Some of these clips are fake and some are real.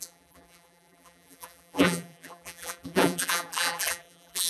fake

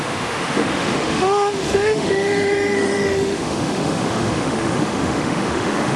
fake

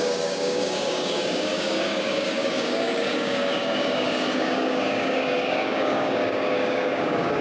fake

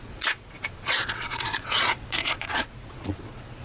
fake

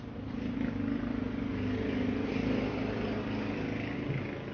real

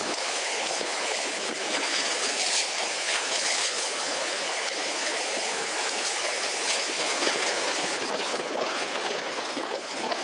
fake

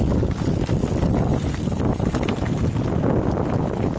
real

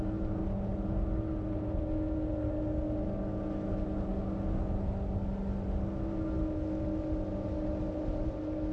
real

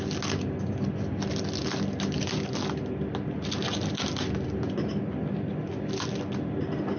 real